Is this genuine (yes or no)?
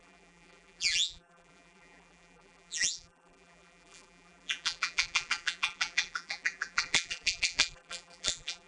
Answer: no